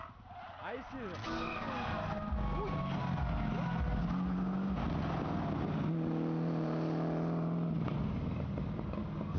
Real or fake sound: real